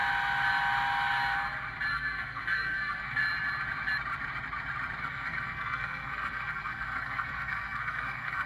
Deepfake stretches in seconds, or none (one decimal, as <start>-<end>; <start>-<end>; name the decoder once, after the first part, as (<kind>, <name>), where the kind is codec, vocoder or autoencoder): 1.9-3.2 (codec, SNAC); 5.0-8.5